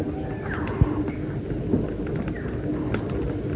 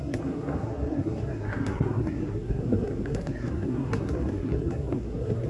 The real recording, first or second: first